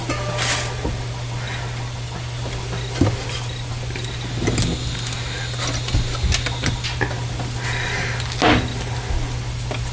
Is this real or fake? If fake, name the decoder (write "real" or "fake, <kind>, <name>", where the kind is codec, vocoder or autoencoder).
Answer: real